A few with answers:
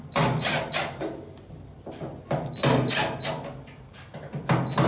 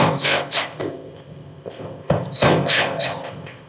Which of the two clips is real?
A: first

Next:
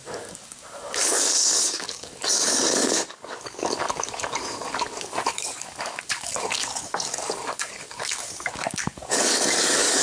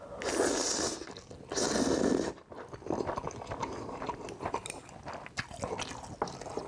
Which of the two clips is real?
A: second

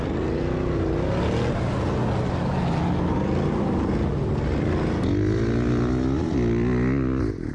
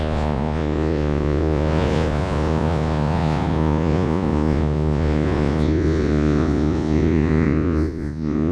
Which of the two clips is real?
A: first